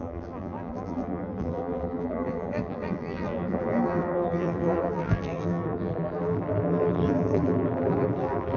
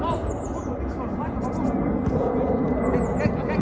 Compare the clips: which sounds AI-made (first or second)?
first